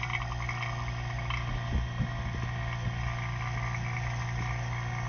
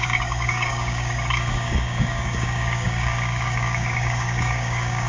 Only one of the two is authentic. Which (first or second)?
first